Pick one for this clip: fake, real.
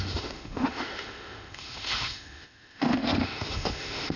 fake